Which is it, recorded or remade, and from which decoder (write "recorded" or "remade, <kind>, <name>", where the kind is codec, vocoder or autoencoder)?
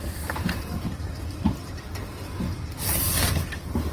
recorded